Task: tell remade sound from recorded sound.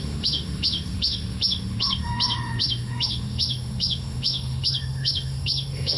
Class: remade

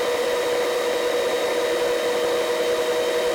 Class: recorded